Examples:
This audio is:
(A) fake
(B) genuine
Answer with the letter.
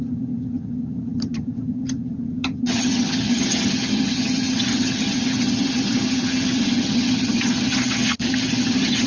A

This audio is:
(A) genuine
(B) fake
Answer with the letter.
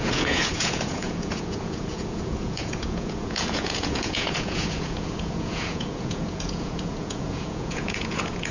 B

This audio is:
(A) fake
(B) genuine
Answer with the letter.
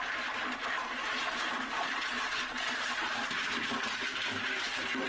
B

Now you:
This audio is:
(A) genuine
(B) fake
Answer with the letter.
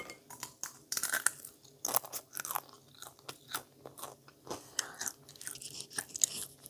A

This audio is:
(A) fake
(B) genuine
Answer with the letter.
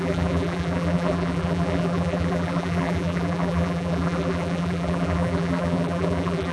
A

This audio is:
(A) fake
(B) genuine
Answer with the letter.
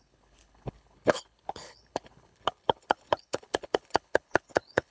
A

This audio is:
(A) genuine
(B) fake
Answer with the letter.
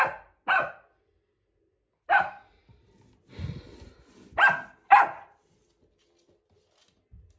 A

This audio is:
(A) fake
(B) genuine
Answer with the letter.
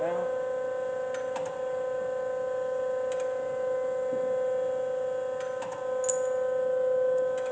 B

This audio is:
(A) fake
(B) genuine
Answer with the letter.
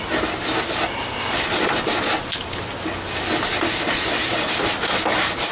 B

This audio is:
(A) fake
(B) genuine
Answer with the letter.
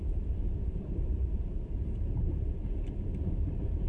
A